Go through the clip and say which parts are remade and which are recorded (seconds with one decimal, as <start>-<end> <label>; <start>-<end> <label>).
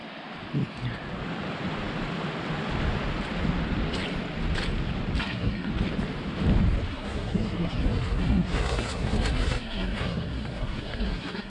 0.0-5.2 recorded; 5.2-5.7 remade; 5.7-6.9 recorded; 6.9-11.5 remade